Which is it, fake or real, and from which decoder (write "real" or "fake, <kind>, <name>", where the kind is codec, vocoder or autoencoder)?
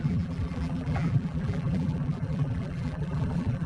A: fake, vocoder, BigVGAN v2